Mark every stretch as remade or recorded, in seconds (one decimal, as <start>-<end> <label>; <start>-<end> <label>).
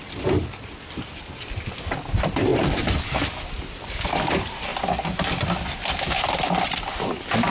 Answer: 0.0-7.5 recorded